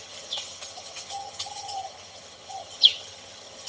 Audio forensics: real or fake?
fake